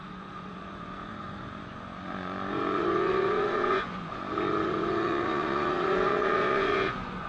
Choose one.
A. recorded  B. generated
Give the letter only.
B